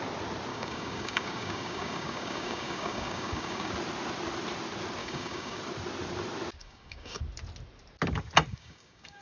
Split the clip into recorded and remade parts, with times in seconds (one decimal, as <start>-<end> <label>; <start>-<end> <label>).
0.0-0.5 recorded; 0.5-3.7 remade; 3.7-5.0 recorded; 5.0-5.6 remade; 5.6-6.6 recorded; 6.6-7.2 remade; 7.2-8.5 recorded; 8.5-9.2 remade